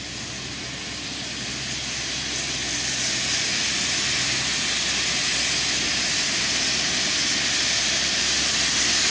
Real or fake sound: real